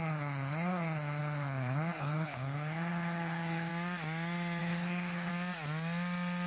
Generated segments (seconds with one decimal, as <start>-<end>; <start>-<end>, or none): 0.0-3.7; 4.6-5.3